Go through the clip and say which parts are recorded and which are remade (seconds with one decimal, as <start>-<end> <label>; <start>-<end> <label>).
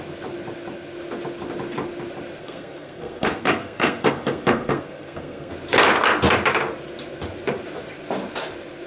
0.0-2.4 recorded; 2.4-5.5 remade; 5.5-8.9 recorded